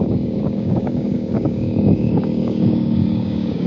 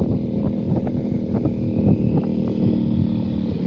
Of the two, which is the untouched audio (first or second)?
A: second